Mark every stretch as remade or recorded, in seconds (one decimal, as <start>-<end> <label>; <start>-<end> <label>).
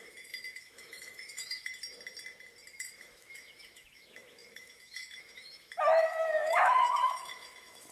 0.0-1.7 remade; 1.7-2.7 recorded; 2.7-7.9 remade